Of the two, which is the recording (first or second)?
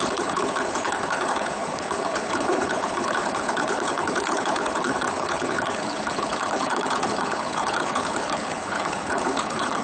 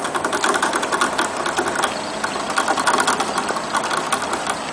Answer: second